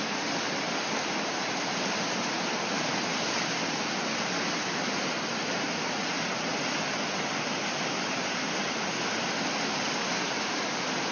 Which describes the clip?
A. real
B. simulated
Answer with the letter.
A